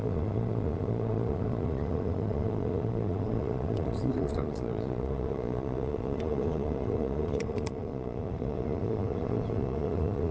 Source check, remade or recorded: remade